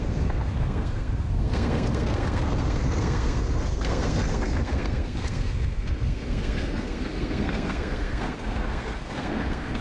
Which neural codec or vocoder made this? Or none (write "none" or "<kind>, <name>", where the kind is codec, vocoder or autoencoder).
codec, SNAC